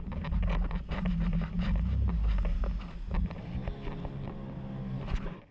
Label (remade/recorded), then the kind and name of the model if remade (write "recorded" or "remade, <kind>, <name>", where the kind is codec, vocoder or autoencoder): recorded